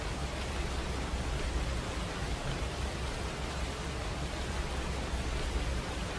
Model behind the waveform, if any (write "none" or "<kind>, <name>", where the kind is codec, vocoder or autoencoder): none